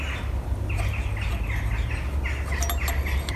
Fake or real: real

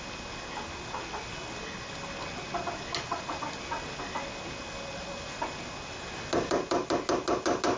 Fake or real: real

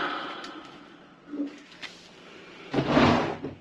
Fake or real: real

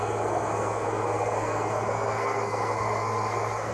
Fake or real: fake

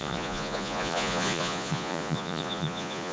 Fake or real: fake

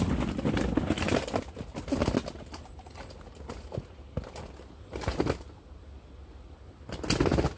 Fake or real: real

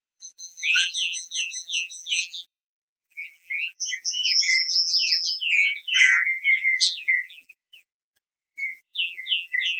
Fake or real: fake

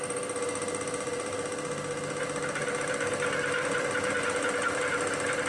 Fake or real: real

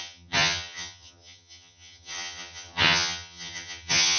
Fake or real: fake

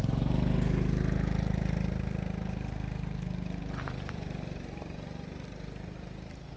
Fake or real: real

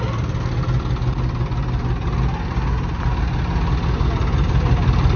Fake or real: real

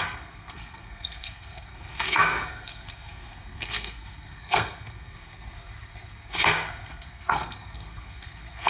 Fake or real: fake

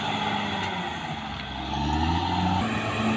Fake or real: real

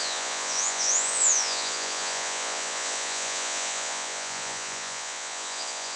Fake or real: fake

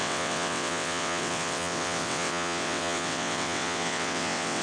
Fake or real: fake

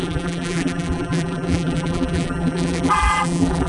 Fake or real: fake